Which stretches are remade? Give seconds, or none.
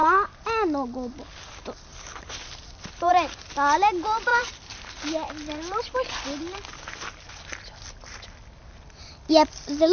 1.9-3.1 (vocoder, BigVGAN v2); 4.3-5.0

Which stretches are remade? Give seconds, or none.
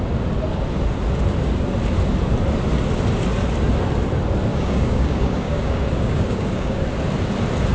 4.5-6.8 (codec, DAC)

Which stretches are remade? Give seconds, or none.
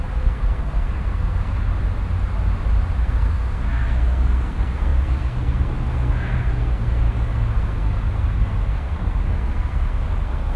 0.0-1.7 (codec, SNAC); 3.0-10.6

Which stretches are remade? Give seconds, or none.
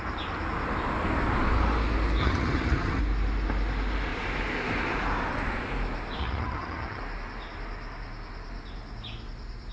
2.2-3.0 (vocoder, HiFi-GAN); 6.2-7.0